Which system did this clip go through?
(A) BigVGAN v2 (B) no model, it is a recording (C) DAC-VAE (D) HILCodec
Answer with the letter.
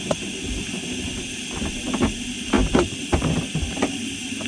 B